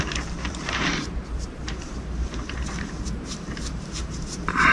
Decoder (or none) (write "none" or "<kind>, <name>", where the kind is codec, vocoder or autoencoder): vocoder, BigVGAN v2